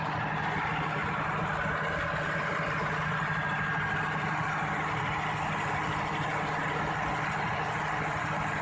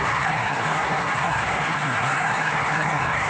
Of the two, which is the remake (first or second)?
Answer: second